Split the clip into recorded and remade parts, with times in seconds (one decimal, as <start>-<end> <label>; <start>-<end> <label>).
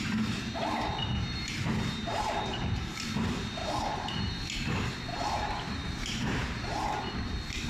0.0-1.0 recorded; 1.0-2.9 remade; 2.9-3.6 recorded; 3.6-4.3 remade; 4.3-5.1 recorded; 5.1-7.0 remade; 7.0-7.7 recorded